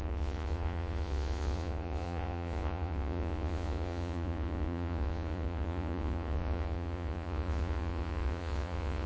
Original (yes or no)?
no